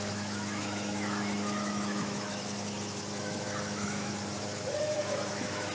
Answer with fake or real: fake